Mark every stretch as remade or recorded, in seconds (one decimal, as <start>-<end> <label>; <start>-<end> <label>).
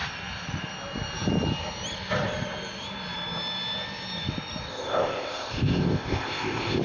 0.0-4.7 recorded; 4.7-6.8 remade